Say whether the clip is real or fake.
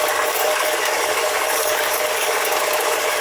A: fake